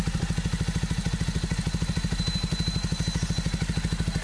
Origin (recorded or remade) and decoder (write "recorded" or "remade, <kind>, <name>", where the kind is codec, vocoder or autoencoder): recorded